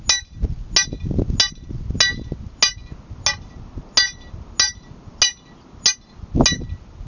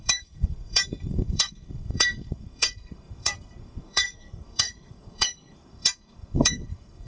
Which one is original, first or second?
first